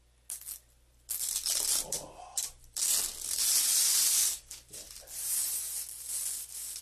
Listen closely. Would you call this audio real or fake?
real